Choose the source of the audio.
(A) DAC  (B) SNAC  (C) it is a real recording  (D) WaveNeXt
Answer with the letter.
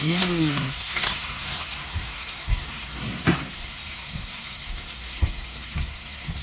B